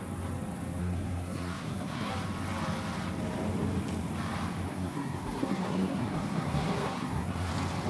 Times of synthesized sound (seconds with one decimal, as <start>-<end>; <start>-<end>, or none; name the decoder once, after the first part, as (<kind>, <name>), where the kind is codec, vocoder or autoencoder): 0.8-2.1 (codec, SNAC); 4.7-7.5